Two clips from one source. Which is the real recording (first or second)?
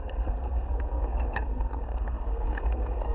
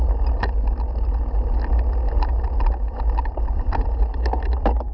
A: second